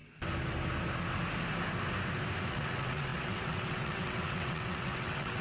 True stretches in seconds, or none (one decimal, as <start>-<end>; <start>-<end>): 0.0-2.5